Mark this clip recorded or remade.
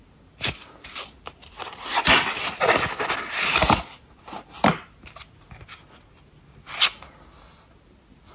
recorded